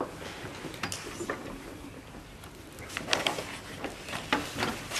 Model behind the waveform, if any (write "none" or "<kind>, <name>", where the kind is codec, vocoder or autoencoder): none